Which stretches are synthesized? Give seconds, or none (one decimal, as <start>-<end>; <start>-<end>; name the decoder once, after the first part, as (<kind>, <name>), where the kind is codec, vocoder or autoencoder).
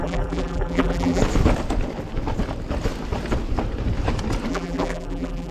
0.0-1.2 (vocoder, BigVGAN v2); 4.5-5.5